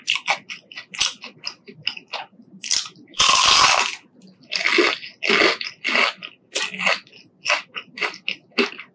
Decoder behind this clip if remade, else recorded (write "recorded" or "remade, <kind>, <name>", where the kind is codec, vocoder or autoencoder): recorded